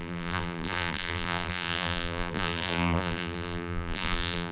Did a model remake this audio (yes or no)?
yes